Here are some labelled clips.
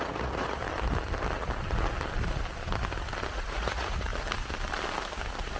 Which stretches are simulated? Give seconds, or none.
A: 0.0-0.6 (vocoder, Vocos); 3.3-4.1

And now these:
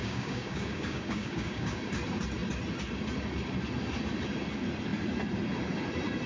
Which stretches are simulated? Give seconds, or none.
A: 0.0-1.8 (codec, DAC)

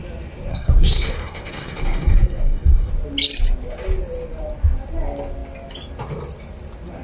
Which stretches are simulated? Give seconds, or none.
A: 0.5-2.9 (codec, SNAC)

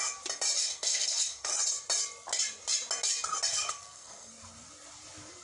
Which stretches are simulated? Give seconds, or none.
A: 0.6-1.5 (codec, SNAC); 3.5-4.3

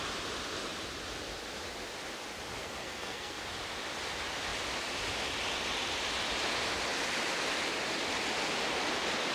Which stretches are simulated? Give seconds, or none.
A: 2.6-3.4 (codec, SNAC)

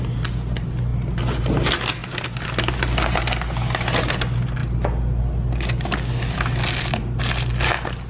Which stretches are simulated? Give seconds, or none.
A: none

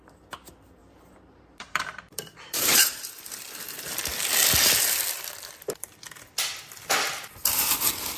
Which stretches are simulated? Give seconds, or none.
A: 0.8-3.0 (vocoder, BigVGAN v2)